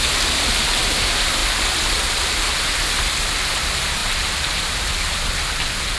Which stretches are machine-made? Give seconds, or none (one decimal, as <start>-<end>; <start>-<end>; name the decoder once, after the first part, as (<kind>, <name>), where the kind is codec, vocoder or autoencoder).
none

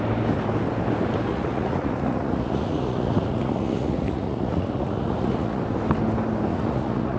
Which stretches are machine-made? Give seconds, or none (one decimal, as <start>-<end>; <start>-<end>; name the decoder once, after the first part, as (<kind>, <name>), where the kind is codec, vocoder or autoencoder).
1.3-5.6 (vocoder, Vocos); 6.5-7.2

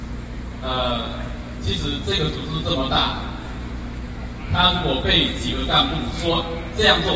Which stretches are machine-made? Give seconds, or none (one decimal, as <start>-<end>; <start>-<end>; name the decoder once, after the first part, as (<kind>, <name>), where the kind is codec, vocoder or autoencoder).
1.1-1.6 (autoencoder, DAC-VAE); 3.4-4.4; 5.6-6.3

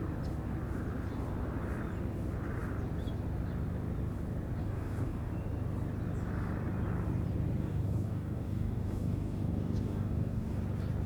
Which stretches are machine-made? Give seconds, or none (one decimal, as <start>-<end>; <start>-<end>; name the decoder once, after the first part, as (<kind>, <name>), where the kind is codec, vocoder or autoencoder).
4.6-5.3 (codec, DAC); 7.6-10.6

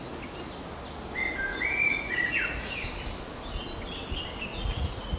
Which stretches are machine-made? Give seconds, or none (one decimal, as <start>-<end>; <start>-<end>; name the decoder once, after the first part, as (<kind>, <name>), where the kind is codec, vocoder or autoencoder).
1.5-2.7 (vocoder, Vocos); 4.5-5.2

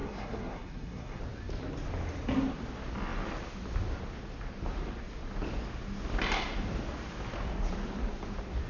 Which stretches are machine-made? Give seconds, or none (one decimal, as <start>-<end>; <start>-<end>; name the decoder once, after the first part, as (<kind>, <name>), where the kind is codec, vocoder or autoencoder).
0.0-1.2 (codec, SNAC)